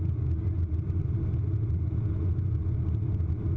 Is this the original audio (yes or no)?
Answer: yes